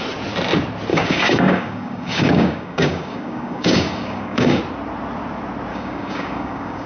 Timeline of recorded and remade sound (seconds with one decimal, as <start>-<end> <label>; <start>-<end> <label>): 0.0-0.9 recorded; 0.9-4.6 remade; 4.6-5.7 recorded; 5.7-6.9 remade